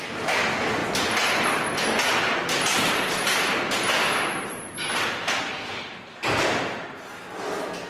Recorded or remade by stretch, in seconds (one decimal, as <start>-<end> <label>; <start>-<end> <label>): 0.0-7.9 recorded